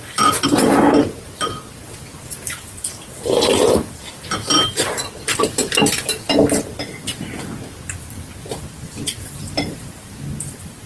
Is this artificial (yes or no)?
yes